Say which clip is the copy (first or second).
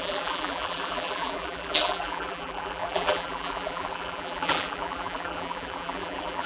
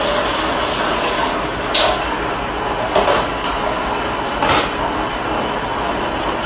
first